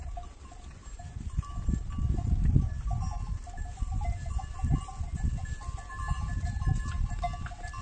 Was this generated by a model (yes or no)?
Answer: no